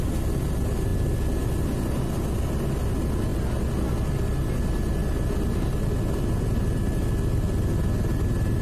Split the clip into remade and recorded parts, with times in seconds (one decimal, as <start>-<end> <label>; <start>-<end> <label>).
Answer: 0.0-8.6 recorded